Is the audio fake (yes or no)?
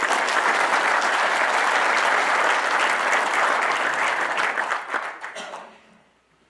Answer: no